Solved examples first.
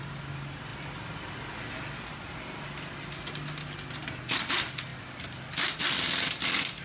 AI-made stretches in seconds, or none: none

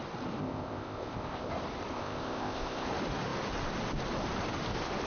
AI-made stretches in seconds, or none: 0.4-1.5 (codec, ZipCodec); 1.9-2.9

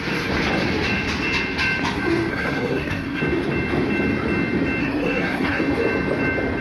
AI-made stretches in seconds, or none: 2.3-3.2 (codec, SNAC); 4.8-5.6

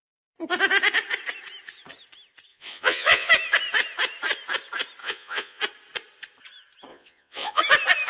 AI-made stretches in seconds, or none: 2.5-3.3 (vocoder, Vocos); 5.0-5.6; 6.9-7.6